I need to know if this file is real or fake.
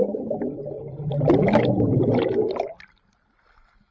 real